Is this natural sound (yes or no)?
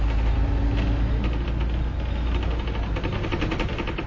yes